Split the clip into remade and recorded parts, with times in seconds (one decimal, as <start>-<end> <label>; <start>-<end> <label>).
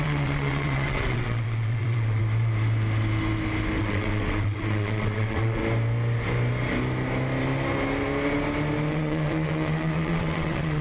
0.0-2.2 remade; 2.2-3.8 recorded; 3.8-5.6 remade; 5.6-8.9 recorded; 8.9-10.8 remade